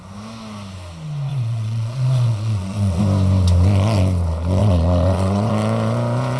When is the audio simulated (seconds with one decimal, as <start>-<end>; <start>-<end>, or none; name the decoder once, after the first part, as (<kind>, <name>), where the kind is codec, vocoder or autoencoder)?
1.3-3.0 (vocoder, Vocos); 4.6-5.5